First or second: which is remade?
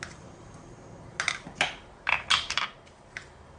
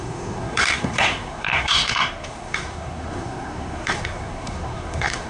second